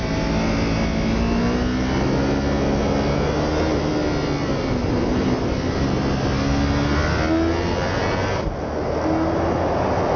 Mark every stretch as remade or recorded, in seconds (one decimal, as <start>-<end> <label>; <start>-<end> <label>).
0.0-10.2 recorded

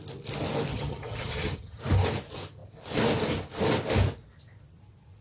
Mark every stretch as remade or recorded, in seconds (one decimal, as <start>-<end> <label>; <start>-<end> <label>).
0.0-0.7 recorded; 0.7-1.8 remade; 1.8-5.2 recorded

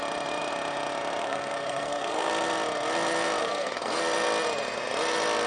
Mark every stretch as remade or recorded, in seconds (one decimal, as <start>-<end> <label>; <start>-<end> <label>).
0.0-1.2 recorded; 1.2-2.3 remade; 2.3-3.4 recorded; 3.4-4.0 remade; 4.0-5.5 recorded

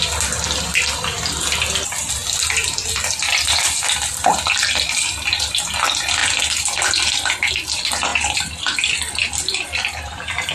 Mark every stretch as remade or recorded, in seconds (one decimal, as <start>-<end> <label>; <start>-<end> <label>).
0.0-10.5 recorded

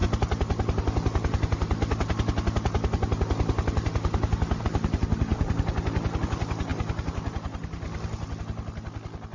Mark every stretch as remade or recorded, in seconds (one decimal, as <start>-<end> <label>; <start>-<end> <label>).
0.0-9.3 recorded

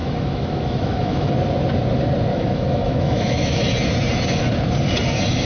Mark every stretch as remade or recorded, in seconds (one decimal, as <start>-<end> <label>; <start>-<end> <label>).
0.0-1.3 remade; 1.3-2.3 recorded; 2.3-3.7 remade; 3.7-5.5 recorded

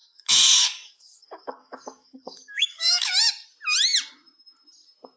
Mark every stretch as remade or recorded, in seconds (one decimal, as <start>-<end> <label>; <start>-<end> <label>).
0.0-3.1 remade; 3.1-5.2 recorded

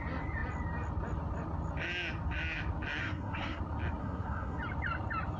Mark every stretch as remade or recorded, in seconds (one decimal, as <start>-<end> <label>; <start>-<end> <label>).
0.0-3.0 recorded; 3.0-3.6 remade; 3.6-4.0 recorded; 4.0-4.6 remade; 4.6-5.4 recorded